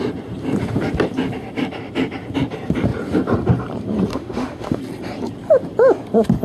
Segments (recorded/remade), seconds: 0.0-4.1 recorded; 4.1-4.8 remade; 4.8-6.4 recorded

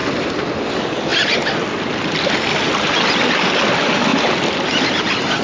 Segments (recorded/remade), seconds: 0.0-5.4 recorded

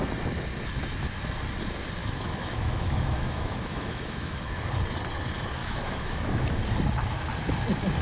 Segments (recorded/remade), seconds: 0.0-2.0 recorded; 2.0-4.4 remade; 4.4-5.6 recorded; 5.6-6.4 remade; 6.4-8.0 recorded